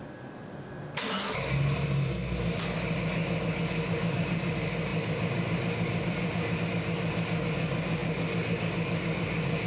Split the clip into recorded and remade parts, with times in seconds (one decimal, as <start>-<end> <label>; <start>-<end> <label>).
0.0-4.9 recorded; 4.9-6.6 remade; 6.6-9.7 recorded